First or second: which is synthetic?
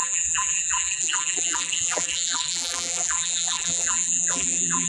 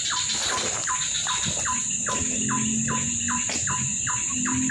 first